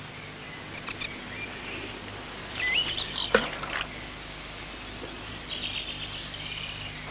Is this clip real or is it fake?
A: real